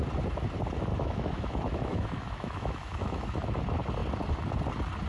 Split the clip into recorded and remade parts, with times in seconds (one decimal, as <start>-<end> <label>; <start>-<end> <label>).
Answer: 0.0-0.9 recorded; 0.9-3.6 remade; 3.6-5.1 recorded